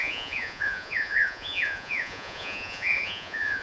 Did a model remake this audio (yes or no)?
yes